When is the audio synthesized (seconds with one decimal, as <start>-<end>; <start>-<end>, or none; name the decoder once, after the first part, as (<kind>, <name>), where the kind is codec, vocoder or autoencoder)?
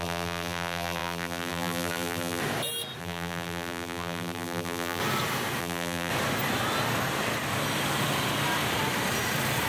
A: 0.0-2.4 (vocoder, BigVGAN v2); 3.0-5.0; 5.6-6.1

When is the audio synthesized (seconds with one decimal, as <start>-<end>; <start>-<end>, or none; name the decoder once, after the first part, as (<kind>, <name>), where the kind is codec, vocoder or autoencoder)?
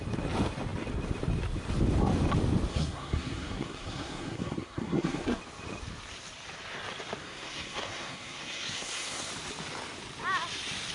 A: 2.7-5.4 (codec, SNAC); 7.2-9.3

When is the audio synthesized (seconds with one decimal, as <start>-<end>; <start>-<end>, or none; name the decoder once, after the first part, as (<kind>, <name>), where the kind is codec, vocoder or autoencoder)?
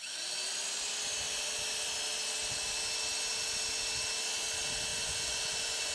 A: 4.9-5.9 (vocoder, Vocos)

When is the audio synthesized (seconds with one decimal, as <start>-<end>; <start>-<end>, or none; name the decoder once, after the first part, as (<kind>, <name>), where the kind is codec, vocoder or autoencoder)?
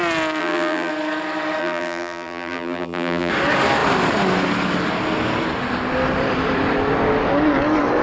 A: 0.4-0.9 (vocoder, BigVGAN v2); 1.6-3.3